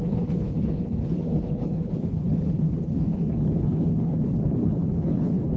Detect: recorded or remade remade